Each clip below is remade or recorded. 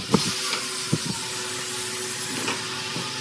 recorded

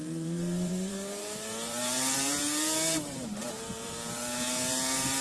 remade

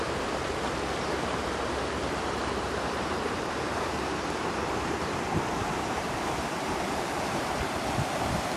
remade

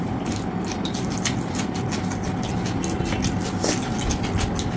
recorded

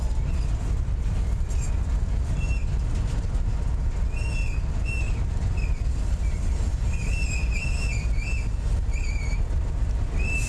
recorded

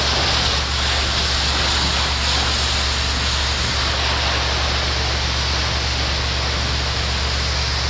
recorded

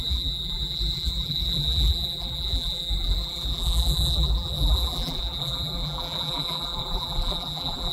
remade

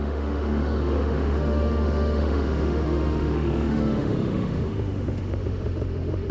remade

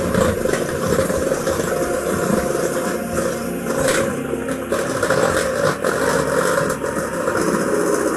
recorded